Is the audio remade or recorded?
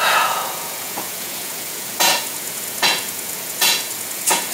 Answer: remade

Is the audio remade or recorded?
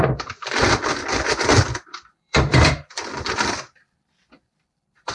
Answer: remade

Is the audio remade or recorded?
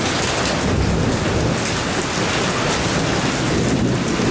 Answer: recorded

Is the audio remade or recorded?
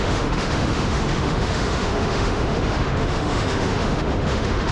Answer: remade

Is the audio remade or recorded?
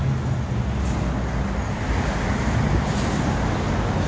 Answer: recorded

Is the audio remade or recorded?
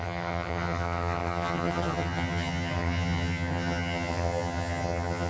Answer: remade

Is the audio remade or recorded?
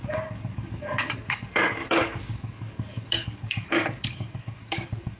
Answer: remade